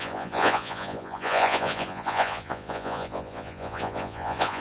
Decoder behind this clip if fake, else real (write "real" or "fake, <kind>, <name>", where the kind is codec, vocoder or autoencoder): fake, vocoder, Vocos